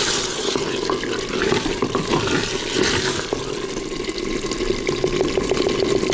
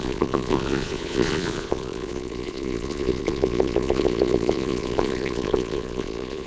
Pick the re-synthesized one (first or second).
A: second